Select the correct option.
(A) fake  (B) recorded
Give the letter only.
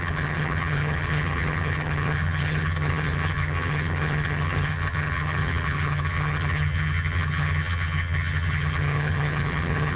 A